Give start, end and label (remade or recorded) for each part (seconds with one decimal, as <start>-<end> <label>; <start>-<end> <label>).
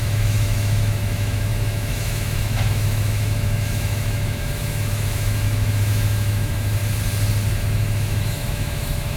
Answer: 0.0-6.8 remade; 6.8-7.6 recorded; 7.6-9.2 remade